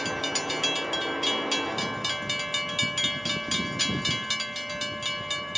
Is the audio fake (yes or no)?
no